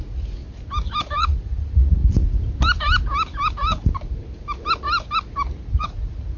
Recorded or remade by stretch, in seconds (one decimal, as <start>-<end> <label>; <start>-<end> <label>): 0.0-0.4 remade; 0.4-1.2 recorded; 1.2-2.0 remade; 2.0-5.8 recorded; 5.8-6.4 remade